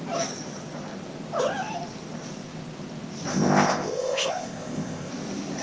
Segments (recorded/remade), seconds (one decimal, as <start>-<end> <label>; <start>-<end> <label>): 0.0-3.3 recorded; 3.3-5.1 remade; 5.1-5.6 recorded